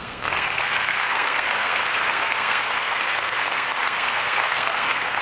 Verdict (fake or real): fake